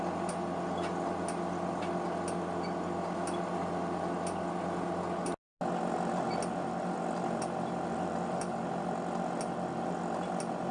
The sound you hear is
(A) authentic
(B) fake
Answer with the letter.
A